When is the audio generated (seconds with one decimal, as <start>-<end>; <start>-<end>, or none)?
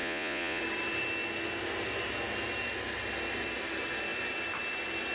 0.0-0.6